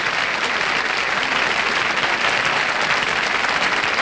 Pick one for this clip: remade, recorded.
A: recorded